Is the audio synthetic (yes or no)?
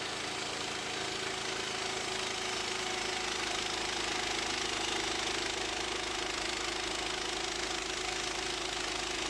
no